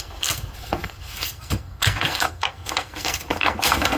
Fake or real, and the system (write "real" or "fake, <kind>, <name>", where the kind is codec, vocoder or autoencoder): fake, codec, SNAC